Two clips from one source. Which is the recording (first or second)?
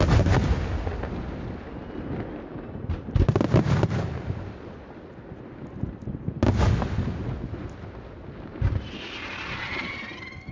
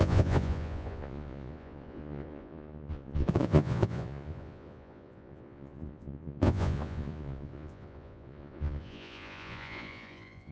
first